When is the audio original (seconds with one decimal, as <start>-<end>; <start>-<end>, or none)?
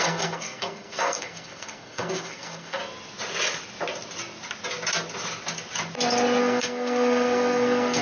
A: 2.8-6.4